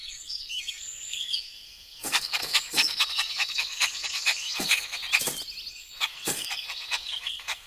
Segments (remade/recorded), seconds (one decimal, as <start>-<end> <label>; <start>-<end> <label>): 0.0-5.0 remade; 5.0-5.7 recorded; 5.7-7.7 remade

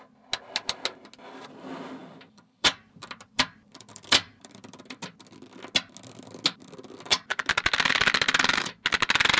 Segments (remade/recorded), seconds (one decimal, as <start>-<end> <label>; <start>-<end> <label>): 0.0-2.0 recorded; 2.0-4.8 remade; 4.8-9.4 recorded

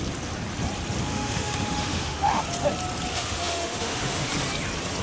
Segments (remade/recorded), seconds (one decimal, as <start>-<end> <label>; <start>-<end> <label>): 0.0-1.1 recorded; 1.1-2.4 remade; 2.4-3.1 recorded; 3.1-4.3 remade; 4.3-5.0 recorded

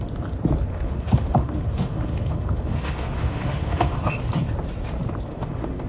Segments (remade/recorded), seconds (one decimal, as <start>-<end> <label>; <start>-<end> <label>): 0.0-0.7 recorded; 0.7-4.2 remade; 4.2-5.3 recorded; 5.3-5.9 remade

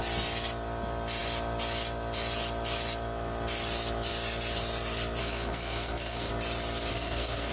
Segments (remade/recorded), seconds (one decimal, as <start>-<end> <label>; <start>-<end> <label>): 0.0-5.2 recorded; 5.2-6.3 remade; 6.3-6.9 recorded; 6.9-7.5 remade